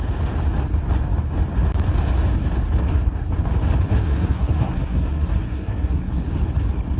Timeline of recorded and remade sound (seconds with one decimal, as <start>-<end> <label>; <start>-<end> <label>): 0.0-2.8 recorded; 2.8-3.3 remade; 3.3-3.9 recorded; 3.9-6.2 remade; 6.2-7.0 recorded

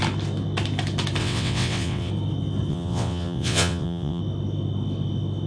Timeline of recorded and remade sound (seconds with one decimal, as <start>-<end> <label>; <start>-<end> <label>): 0.0-1.2 recorded; 1.2-2.1 remade; 2.1-2.7 recorded; 2.7-4.2 remade; 4.2-5.5 recorded